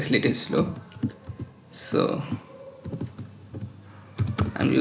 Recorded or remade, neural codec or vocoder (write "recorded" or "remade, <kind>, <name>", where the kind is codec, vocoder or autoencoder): recorded